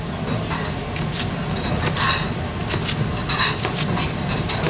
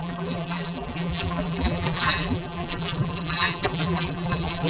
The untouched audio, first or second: first